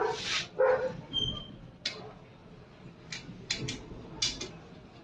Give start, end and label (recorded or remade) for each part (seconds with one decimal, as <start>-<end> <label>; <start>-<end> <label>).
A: 0.0-5.0 recorded